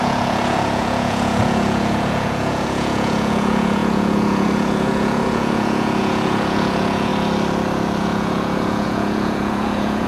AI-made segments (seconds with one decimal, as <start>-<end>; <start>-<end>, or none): 0.0-7.1; 8.0-10.1